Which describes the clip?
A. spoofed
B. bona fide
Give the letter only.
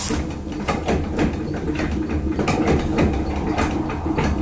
B